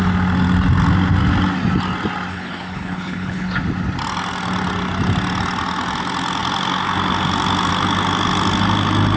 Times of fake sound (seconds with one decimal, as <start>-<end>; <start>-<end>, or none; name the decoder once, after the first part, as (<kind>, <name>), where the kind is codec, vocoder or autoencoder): 2.3-3.5 (codec, HILCodec)

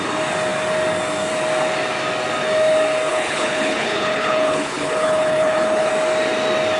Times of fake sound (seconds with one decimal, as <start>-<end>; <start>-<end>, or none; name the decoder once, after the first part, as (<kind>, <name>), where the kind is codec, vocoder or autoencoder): 3.1-5.9 (codec, HILCodec)

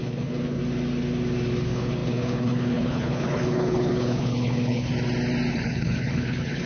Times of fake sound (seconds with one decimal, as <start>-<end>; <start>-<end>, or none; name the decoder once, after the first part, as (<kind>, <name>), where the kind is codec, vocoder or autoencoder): 0.0-0.6 (codec, HILCodec); 1.6-4.9; 5.5-6.7

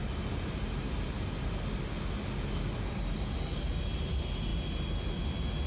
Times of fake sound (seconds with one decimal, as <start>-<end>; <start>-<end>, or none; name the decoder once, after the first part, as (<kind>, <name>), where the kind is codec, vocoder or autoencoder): none